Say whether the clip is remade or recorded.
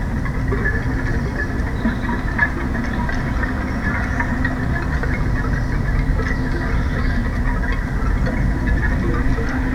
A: recorded